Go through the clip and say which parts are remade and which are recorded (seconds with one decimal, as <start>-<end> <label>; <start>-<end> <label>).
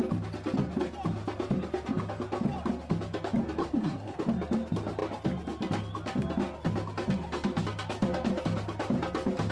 0.0-3.6 recorded; 3.6-4.2 remade; 4.2-9.5 recorded